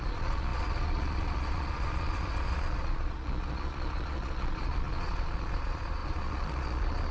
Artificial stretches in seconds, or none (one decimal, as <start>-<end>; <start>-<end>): 0.0-7.1